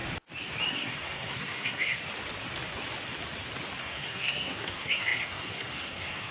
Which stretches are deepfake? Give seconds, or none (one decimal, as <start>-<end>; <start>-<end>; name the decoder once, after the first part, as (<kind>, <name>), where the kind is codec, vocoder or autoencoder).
0.7-2.0 (codec, SNAC); 3.8-6.3